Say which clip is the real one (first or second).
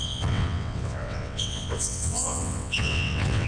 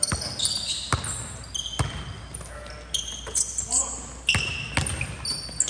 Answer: second